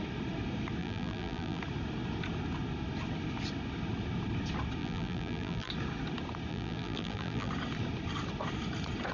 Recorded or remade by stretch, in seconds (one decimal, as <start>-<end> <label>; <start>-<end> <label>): 0.0-0.8 recorded; 0.8-1.6 remade; 1.6-4.8 recorded; 4.8-5.7 remade; 5.7-6.5 recorded; 6.5-7.5 remade; 7.5-9.1 recorded